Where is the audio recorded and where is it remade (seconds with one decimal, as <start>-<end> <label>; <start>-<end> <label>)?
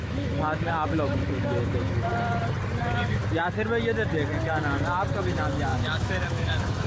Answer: 0.0-2.1 remade; 2.1-2.8 recorded; 2.8-3.2 remade; 3.2-5.2 recorded; 5.2-6.9 remade